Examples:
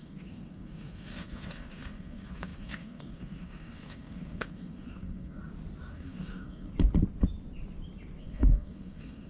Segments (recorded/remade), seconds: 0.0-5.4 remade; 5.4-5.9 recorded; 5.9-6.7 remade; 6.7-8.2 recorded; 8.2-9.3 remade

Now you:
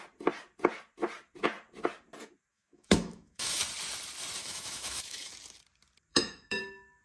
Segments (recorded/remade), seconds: 0.0-2.5 recorded; 2.5-3.6 remade; 3.6-4.4 recorded; 4.4-5.3 remade; 5.3-6.1 recorded; 6.1-6.6 remade; 6.6-7.0 recorded

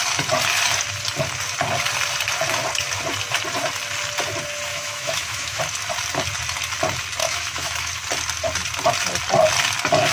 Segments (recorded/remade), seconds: 0.0-4.7 recorded; 4.7-5.6 remade; 5.6-7.2 recorded; 7.2-7.9 remade; 7.9-10.1 recorded

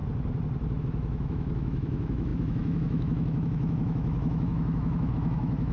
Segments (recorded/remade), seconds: 0.0-0.8 recorded; 0.8-5.7 remade

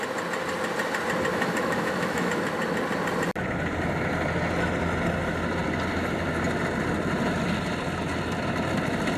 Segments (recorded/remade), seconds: 0.0-1.3 recorded; 1.3-2.3 remade; 2.3-9.2 recorded

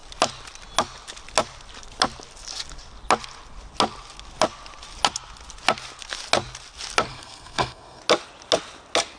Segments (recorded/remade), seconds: 0.0-7.1 recorded; 7.1-8.0 remade; 8.0-9.2 recorded

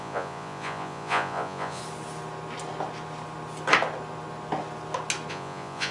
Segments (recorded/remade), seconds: 0.0-1.8 remade; 1.8-5.3 recorded; 5.3-5.9 remade